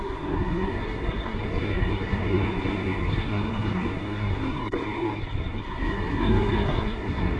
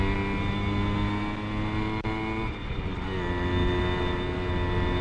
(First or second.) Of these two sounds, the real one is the second